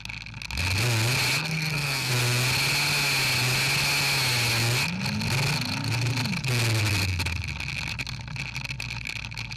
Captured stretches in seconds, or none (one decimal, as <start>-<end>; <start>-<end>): 0.0-1.4; 2.1-9.6